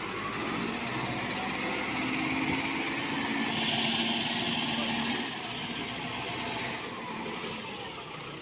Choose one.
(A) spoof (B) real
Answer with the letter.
B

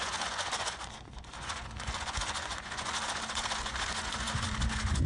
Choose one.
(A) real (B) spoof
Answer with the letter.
B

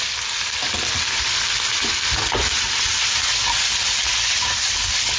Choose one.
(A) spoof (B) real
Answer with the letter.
B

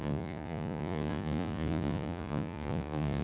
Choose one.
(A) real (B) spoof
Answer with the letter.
B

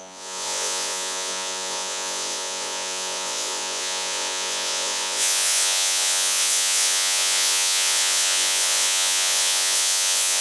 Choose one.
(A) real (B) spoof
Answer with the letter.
B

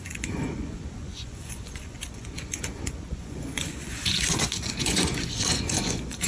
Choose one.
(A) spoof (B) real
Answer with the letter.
A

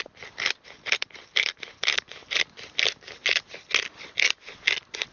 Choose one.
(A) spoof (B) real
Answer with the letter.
B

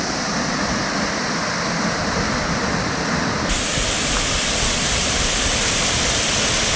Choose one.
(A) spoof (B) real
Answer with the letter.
B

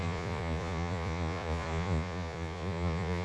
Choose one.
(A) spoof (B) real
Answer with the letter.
A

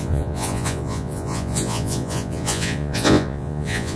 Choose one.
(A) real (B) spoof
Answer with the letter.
B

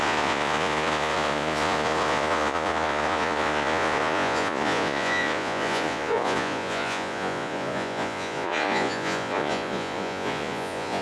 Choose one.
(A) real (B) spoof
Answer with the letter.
B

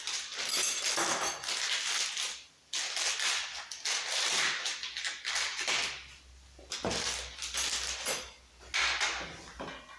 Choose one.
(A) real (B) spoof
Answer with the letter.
A